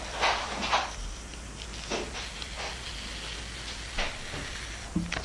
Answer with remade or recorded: recorded